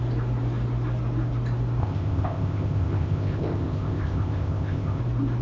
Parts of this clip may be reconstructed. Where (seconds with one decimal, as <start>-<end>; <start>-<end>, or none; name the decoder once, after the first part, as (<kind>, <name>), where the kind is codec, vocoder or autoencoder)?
1.8-5.0 (codec, ZipCodec)